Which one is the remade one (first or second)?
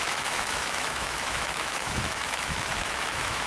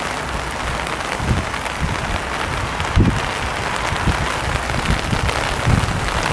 first